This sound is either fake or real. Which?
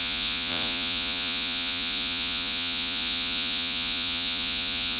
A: fake